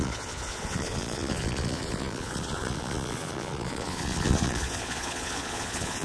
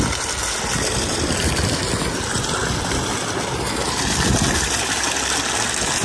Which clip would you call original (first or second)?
second